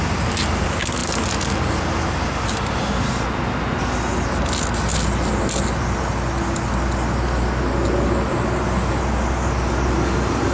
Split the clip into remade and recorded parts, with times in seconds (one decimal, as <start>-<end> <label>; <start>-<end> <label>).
0.0-10.5 recorded